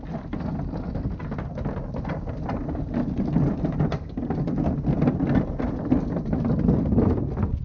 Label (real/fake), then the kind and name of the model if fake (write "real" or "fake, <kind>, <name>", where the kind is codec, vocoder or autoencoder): real